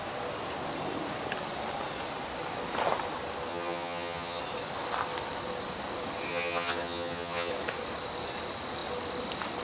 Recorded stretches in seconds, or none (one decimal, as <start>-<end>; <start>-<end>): 0.0-3.5; 4.4-6.3; 7.5-9.6